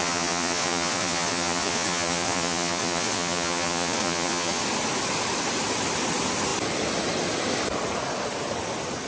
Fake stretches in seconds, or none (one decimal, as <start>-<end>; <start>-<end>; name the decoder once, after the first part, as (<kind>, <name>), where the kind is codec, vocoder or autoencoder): 0.0-4.6 (vocoder, Vocos)